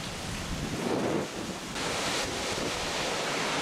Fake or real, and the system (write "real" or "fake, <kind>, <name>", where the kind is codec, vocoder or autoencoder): real